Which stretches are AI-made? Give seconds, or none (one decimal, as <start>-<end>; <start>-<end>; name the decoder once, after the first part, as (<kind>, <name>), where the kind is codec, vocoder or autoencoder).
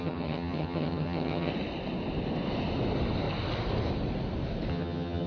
0.0-1.5 (vocoder, HiFi-GAN); 4.7-5.3